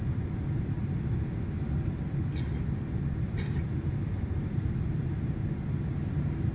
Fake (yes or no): no